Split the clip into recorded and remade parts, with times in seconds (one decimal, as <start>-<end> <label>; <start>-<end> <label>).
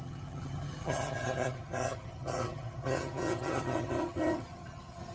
0.0-5.1 remade